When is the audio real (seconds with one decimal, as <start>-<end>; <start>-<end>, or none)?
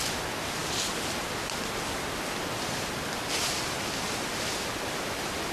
0.0-5.5